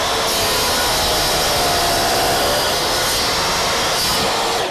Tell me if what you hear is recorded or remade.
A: recorded